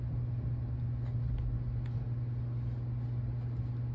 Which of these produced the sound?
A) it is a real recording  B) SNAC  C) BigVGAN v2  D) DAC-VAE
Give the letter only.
A